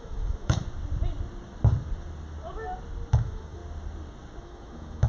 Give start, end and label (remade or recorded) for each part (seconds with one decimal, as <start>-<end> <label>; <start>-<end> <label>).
0.0-0.6 remade; 0.6-3.1 recorded; 3.1-3.6 remade; 3.6-4.4 recorded; 4.4-5.1 remade